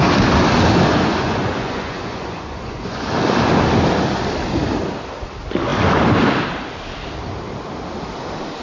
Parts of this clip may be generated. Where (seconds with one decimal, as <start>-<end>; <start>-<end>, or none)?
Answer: 0.9-3.1